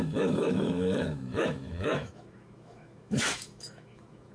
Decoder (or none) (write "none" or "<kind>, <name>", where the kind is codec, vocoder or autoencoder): autoencoder, DAC-VAE